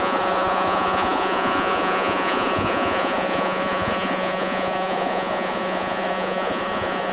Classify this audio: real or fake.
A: fake